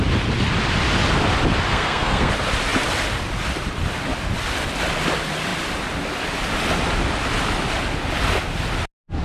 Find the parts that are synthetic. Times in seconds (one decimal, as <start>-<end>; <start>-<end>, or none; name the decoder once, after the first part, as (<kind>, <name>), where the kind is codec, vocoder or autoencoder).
1.7-2.3 (codec, SNAC)